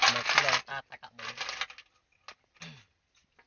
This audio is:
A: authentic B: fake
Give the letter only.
A